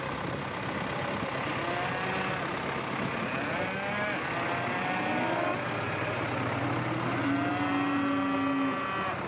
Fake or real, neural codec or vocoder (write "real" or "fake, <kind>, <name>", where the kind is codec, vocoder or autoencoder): real